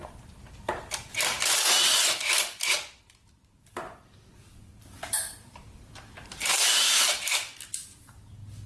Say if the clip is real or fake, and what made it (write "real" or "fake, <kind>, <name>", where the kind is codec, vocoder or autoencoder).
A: real